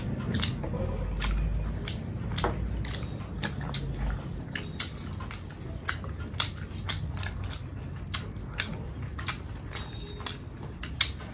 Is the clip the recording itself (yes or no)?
yes